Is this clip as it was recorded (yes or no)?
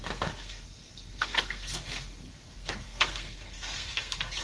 no